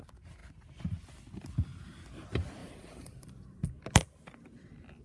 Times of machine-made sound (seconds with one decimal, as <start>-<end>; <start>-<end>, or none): 2.6-3.3